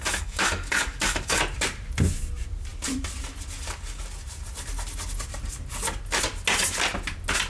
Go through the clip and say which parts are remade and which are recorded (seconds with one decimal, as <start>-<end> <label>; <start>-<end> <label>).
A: 0.0-1.4 remade; 1.4-7.5 recorded